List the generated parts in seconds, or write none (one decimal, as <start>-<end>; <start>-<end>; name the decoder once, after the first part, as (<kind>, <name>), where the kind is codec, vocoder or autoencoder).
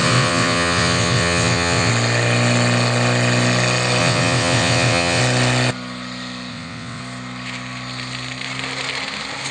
0.0-1.9 (vocoder, WaveNeXt); 4.0-5.2; 6.5-7.0